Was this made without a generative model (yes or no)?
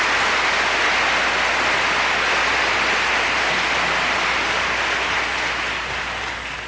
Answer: yes